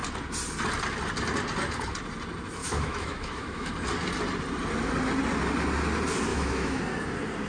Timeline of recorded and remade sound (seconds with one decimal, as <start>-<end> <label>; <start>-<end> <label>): 0.0-2.6 recorded; 2.6-3.7 remade; 3.7-6.3 recorded; 6.3-6.8 remade; 6.8-7.5 recorded